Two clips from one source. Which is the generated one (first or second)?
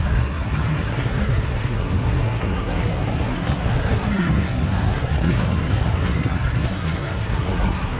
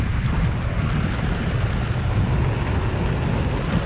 first